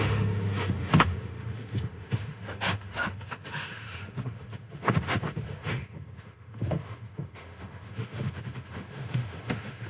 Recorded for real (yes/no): no